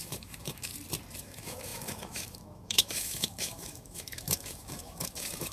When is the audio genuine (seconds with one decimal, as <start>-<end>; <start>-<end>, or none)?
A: 0.7-1.2